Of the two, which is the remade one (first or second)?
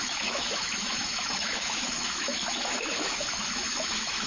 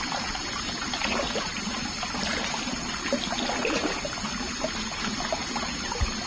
first